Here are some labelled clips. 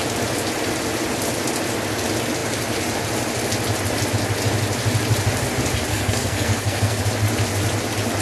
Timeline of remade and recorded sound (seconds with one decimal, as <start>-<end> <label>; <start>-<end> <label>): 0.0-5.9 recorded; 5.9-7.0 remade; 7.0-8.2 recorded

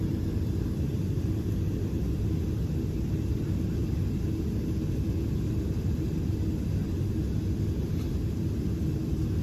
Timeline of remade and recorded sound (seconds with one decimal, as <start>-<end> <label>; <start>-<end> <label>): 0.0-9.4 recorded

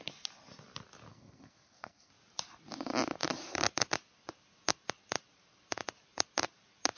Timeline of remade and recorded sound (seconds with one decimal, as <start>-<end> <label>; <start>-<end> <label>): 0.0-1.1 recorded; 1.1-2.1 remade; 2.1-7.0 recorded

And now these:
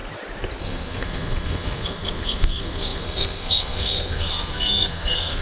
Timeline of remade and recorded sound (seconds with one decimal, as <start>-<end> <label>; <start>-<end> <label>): 0.0-0.6 recorded; 0.6-5.4 remade

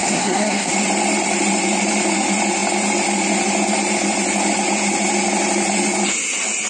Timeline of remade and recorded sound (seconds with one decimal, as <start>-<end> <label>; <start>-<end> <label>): 0.0-0.7 remade; 0.7-6.7 recorded

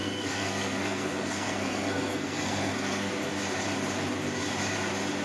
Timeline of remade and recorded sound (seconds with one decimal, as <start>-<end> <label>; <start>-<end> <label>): 0.0-3.1 remade; 3.1-5.2 recorded

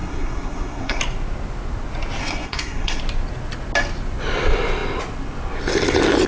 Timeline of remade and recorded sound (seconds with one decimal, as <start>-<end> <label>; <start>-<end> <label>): 0.0-1.0 remade; 1.0-2.2 recorded; 2.2-3.0 remade; 3.0-6.3 recorded